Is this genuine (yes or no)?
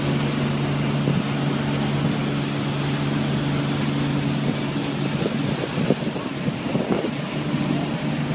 yes